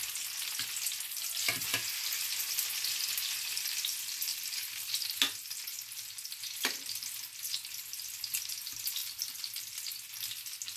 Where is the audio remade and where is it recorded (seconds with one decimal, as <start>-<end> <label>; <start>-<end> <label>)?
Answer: 0.0-10.8 recorded